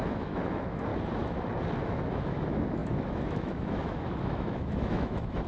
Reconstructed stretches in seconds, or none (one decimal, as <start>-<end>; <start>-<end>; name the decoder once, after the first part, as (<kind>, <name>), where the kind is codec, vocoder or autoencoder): 0.0-0.9 (autoencoder, DAC-VAE); 1.8-5.5